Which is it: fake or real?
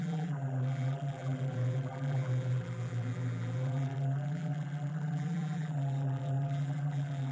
fake